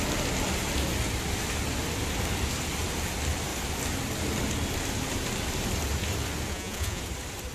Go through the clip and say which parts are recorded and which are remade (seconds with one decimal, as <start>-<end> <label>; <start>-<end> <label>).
0.0-6.5 recorded; 6.5-7.0 remade; 7.0-7.5 recorded